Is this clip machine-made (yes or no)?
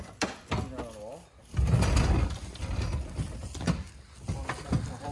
no